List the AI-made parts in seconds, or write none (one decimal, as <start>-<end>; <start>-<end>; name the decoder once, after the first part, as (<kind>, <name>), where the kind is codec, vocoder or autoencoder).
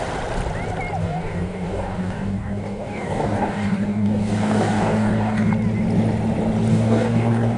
1.0-5.5 (codec, DAC); 6.7-7.6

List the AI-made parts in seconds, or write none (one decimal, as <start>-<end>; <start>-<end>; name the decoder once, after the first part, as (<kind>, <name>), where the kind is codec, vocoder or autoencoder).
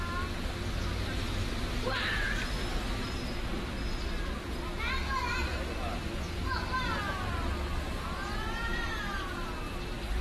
5.0-6.0 (vocoder, BigVGAN v2)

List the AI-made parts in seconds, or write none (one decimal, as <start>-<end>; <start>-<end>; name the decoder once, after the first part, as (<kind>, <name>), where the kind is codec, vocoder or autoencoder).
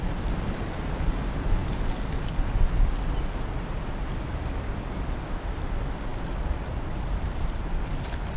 none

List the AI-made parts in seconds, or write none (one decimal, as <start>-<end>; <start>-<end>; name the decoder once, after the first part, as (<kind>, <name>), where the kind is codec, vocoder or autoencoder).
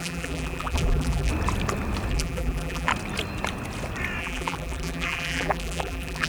0.0-1.3 (vocoder, BigVGAN v2); 2.1-2.9; 4.2-6.3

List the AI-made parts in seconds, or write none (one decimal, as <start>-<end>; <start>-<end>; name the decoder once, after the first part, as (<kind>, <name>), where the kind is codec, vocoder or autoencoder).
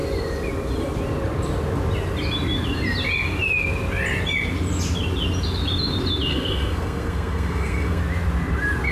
6.3-8.0 (codec, SNAC)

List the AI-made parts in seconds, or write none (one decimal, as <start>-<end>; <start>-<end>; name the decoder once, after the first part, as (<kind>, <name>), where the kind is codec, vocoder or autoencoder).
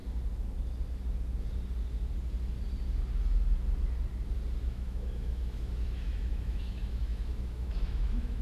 4.6-8.4 (autoencoder, DAC-VAE)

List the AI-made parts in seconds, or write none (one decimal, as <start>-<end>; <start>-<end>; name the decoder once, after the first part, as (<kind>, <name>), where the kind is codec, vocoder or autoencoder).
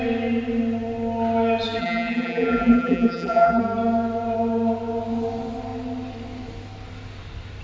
1.8-3.6 (vocoder, BigVGAN v2)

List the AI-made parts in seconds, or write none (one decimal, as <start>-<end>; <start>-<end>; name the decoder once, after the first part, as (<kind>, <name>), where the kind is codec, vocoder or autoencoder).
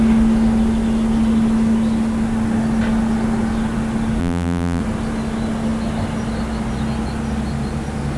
4.2-4.8 (vocoder, BigVGAN v2)